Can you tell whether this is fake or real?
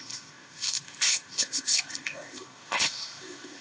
fake